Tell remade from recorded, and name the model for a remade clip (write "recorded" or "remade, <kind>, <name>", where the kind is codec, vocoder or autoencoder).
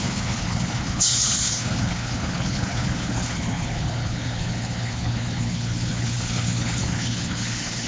remade, codec, HILCodec